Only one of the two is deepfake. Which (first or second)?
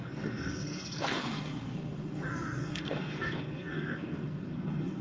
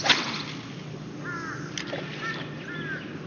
first